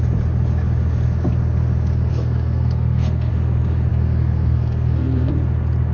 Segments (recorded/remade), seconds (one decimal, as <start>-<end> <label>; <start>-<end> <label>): 0.0-2.1 recorded; 2.1-3.3 remade; 3.3-3.9 recorded; 3.9-5.3 remade; 5.3-5.9 recorded